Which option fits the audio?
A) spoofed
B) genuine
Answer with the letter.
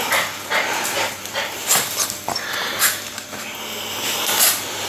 B